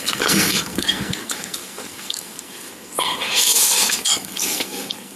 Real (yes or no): no